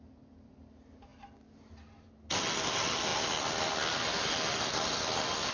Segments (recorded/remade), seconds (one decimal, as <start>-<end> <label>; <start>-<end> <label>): 0.0-5.5 recorded